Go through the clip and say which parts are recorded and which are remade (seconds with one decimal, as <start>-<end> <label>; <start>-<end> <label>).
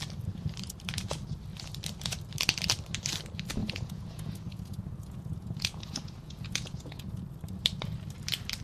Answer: 0.0-3.6 recorded; 3.6-7.2 remade; 7.2-8.6 recorded